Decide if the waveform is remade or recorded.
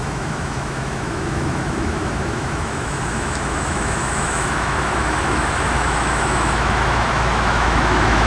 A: remade